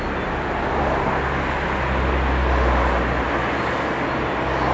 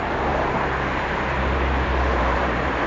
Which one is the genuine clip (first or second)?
first